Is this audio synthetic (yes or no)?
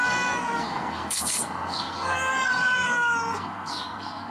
yes